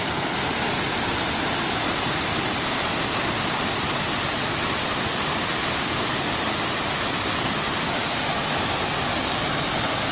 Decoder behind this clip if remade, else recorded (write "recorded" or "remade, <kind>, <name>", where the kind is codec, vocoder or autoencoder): recorded